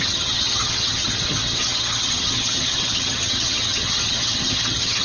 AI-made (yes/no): yes